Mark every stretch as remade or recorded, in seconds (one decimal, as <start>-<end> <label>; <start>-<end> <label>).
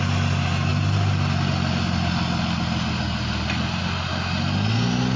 0.0-5.2 recorded